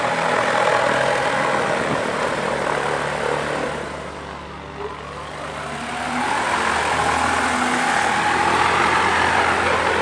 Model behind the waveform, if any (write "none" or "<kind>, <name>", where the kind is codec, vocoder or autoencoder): none